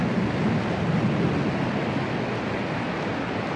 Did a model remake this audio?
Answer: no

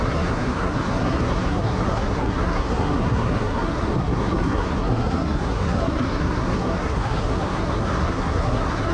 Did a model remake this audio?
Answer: yes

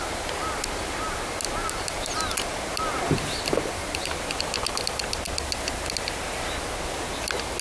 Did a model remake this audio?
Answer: no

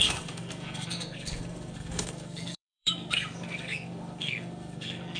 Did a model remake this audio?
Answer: yes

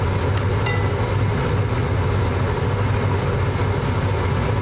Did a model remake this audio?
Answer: no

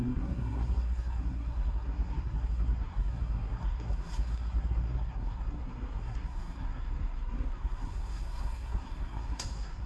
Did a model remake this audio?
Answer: yes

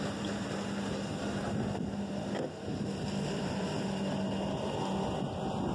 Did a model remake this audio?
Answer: no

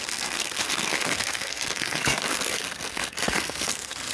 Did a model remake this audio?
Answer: yes